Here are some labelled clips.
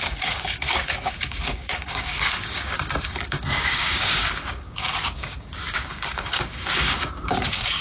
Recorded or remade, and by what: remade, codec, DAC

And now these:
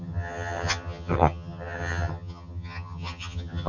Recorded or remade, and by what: remade, vocoder, HiFi-GAN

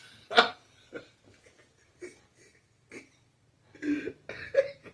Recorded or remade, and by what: recorded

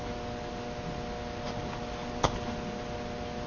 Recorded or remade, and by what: recorded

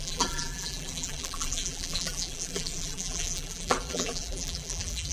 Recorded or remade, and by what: remade, vocoder, BigVGAN v2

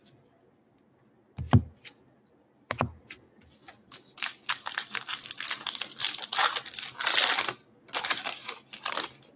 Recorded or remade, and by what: recorded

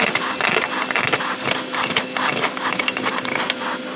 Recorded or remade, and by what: recorded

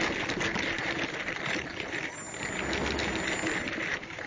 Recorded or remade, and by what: recorded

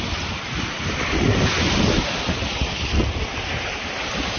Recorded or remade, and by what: recorded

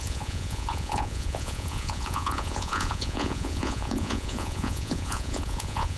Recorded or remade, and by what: remade, vocoder, Vocos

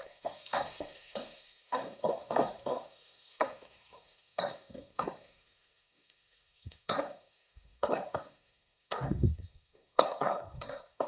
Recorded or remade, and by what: remade, codec, SNAC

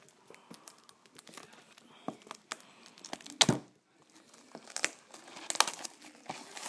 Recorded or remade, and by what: recorded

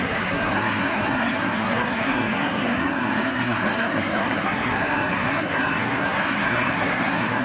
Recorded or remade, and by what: remade, codec, SNAC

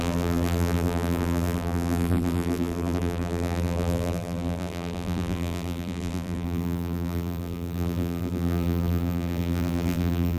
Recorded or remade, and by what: remade, vocoder, BigVGAN v2